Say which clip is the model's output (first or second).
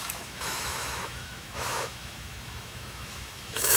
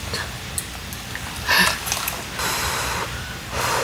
first